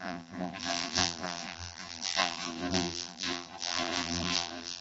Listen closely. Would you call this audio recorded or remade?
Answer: remade